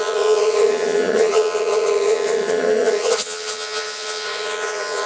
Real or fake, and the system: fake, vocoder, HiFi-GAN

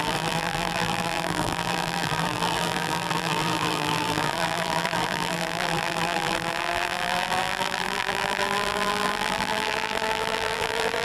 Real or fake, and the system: fake, vocoder, BigVGAN v2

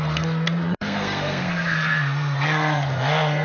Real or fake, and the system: fake, codec, SNAC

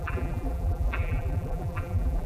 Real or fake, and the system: fake, vocoder, BigVGAN v2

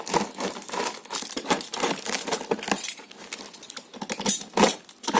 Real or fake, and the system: real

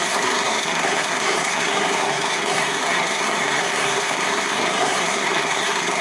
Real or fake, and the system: fake, codec, SNAC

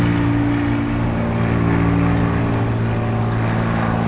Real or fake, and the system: real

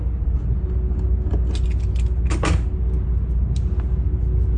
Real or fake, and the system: real